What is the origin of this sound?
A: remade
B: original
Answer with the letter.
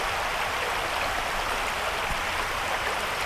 A